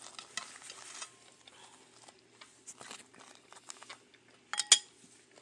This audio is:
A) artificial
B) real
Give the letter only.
B